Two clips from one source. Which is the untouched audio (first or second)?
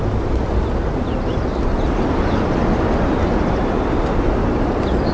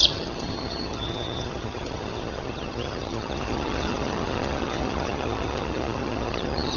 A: first